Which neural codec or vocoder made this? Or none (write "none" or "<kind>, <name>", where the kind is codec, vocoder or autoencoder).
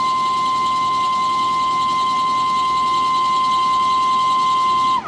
none